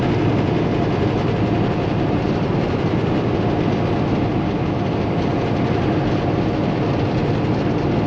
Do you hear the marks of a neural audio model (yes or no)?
no